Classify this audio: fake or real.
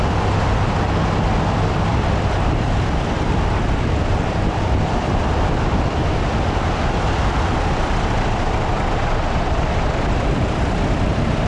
fake